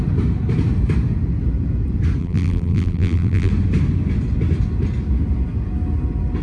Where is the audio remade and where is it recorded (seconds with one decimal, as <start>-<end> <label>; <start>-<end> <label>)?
0.0-2.2 recorded; 2.2-3.5 remade; 3.5-6.4 recorded